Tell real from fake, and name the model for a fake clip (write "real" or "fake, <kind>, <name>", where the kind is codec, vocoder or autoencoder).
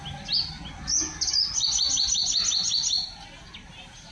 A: real